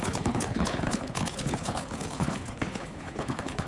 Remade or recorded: remade